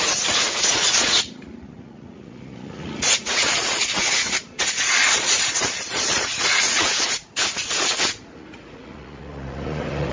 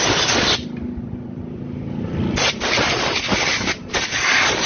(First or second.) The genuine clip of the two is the second